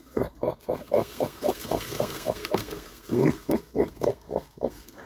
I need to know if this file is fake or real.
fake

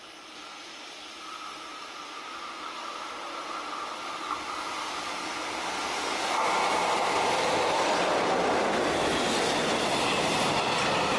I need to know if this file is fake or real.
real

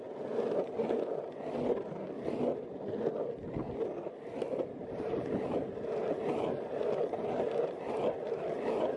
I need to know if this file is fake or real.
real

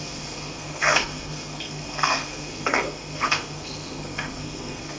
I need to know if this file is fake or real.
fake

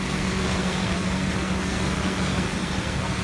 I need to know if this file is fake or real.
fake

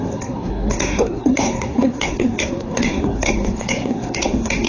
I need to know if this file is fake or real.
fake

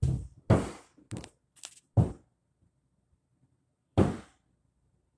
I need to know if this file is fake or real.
real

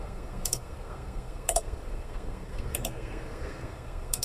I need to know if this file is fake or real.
fake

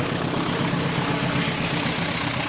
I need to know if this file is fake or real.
real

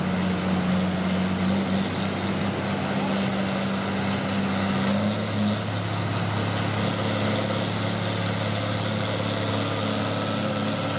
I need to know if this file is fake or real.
real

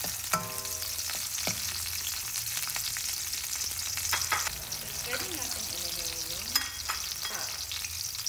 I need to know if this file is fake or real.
real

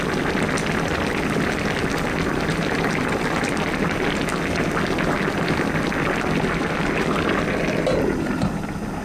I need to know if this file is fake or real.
real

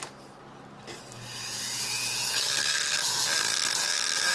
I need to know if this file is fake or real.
real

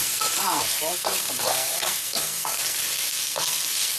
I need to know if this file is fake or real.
fake